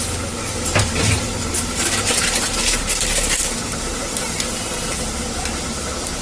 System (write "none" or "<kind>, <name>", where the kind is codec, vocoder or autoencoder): none